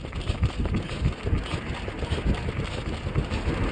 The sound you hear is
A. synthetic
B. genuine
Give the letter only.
B